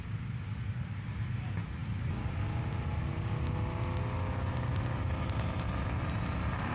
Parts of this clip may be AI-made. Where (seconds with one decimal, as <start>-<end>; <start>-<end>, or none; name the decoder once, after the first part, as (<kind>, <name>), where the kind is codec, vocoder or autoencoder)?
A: none

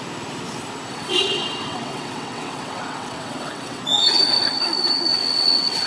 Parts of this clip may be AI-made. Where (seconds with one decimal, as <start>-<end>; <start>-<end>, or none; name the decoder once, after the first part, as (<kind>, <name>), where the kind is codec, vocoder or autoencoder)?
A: 0.9-3.8 (vocoder, WaveNeXt); 5.1-5.9

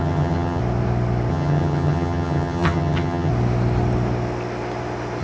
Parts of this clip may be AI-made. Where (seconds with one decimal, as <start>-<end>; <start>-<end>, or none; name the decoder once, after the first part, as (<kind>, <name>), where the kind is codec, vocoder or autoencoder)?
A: 0.0-0.6 (vocoder, HiFi-GAN); 1.3-3.3

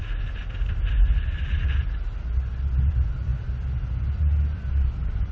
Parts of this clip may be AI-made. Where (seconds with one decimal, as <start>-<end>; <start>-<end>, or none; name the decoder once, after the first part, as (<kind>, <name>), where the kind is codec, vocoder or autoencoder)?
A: none

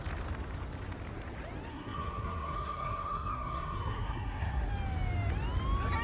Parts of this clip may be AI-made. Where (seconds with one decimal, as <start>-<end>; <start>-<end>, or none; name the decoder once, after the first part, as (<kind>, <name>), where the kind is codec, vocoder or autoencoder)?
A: 1.7-4.7 (codec, SNAC)

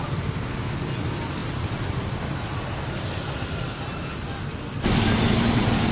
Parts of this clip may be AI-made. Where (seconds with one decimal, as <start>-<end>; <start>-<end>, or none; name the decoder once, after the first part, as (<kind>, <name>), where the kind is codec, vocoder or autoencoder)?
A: none